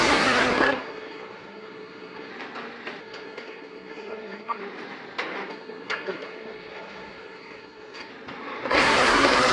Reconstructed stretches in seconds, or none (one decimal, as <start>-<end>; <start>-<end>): 0.0-2.3; 3.0-4.6; 5.5-8.1; 8.7-9.5